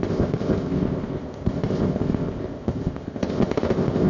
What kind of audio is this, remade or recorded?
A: remade